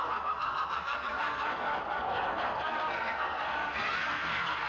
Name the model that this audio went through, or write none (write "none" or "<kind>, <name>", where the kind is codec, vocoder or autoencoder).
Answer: codec, SNAC